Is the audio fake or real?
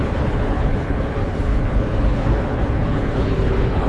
fake